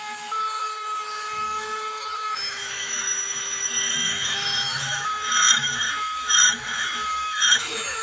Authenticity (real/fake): fake